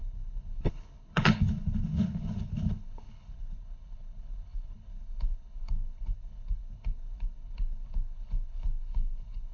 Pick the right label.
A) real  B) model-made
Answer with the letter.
B